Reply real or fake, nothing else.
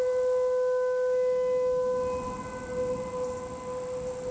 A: real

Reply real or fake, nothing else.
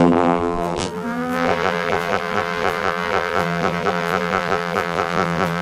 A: fake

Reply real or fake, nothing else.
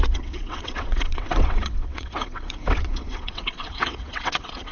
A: fake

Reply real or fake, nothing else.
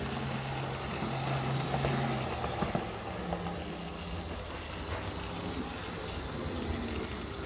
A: real